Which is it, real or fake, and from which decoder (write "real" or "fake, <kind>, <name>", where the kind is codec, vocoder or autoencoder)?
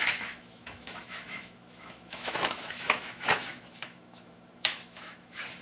fake, autoencoder, DAC-VAE